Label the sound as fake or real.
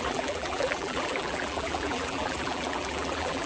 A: fake